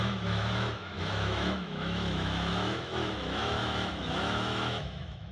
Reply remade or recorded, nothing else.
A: remade